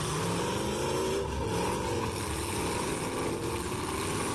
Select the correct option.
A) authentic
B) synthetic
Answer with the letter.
A